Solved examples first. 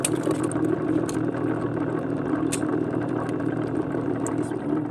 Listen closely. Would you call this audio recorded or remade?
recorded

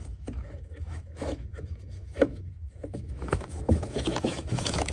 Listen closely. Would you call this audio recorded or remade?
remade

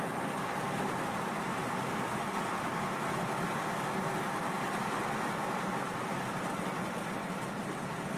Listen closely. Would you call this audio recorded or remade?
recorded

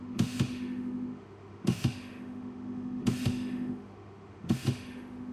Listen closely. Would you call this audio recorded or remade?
remade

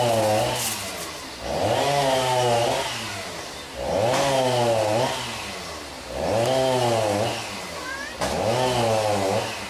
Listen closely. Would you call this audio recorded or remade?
recorded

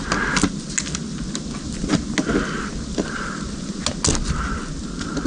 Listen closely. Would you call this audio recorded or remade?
recorded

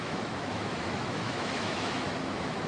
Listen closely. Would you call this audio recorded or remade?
remade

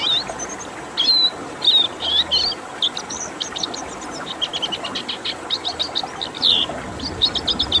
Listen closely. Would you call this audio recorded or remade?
recorded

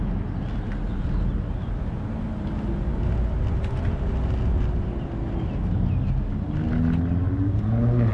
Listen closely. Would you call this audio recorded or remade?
recorded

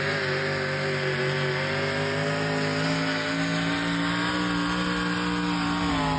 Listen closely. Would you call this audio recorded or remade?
recorded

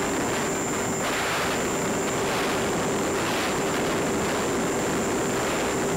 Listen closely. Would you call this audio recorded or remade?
recorded